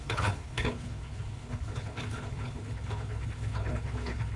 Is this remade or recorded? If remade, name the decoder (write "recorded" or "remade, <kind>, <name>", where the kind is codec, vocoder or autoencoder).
remade, codec, HILCodec